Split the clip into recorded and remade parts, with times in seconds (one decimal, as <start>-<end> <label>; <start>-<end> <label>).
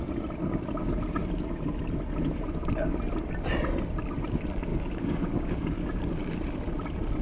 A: 0.0-4.7 recorded; 4.7-6.0 remade; 6.0-7.2 recorded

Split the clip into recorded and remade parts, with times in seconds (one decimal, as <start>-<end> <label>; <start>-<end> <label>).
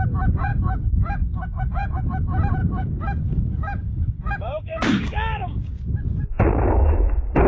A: 0.0-0.5 recorded; 0.5-2.0 remade; 2.0-2.6 recorded; 2.6-5.7 remade; 5.7-7.5 recorded